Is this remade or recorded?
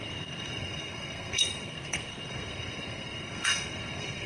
remade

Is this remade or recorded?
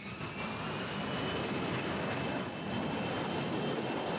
recorded